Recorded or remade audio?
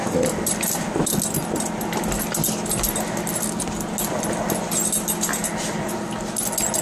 recorded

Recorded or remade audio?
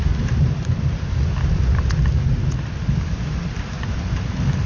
recorded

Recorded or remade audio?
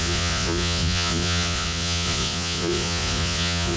remade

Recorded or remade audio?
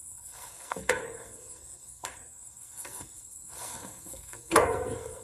remade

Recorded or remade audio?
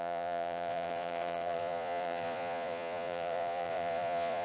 remade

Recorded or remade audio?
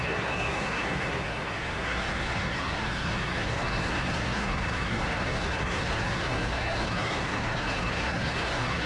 remade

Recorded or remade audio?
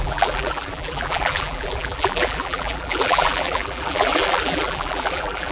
remade